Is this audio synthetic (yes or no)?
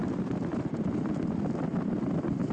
no